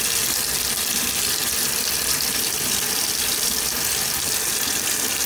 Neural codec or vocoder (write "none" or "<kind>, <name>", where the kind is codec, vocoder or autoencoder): vocoder, BigVGAN v2